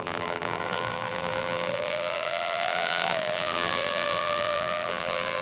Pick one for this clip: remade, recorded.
remade